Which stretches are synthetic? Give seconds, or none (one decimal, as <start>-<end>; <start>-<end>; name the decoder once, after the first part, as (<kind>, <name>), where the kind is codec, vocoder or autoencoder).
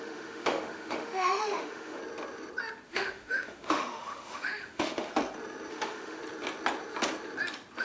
0.0-2.0 (autoencoder, DAC-VAE); 2.9-5.1; 5.7-6.2